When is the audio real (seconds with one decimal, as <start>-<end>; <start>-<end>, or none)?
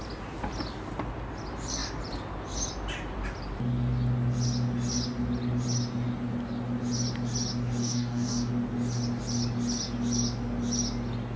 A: 0.0-7.8; 8.5-11.4